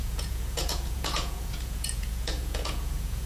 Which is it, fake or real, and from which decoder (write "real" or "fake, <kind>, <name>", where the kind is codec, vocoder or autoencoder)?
fake, vocoder, Vocos